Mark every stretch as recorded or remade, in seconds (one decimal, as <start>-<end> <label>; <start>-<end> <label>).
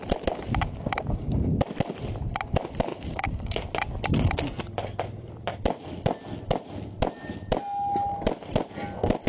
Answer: 0.0-2.9 recorded; 2.9-3.5 remade; 3.5-9.3 recorded